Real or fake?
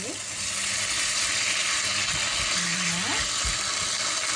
real